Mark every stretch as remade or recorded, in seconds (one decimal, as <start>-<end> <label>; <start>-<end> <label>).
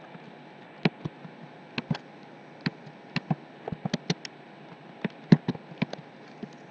0.0-6.7 recorded